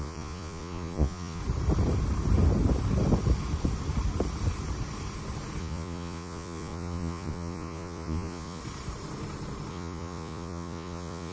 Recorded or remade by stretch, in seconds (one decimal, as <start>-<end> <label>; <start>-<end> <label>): 0.0-1.4 remade; 1.4-5.6 recorded; 5.6-8.6 remade; 8.6-9.7 recorded; 9.7-11.3 remade